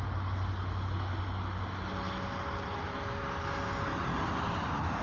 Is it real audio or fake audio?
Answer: real